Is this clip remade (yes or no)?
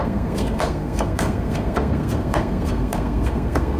yes